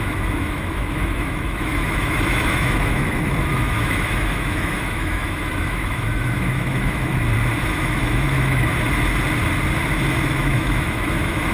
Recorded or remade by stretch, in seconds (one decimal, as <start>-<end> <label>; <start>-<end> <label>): 0.0-7.1 remade; 7.1-7.6 recorded; 7.6-8.7 remade; 8.7-10.3 recorded; 10.3-11.5 remade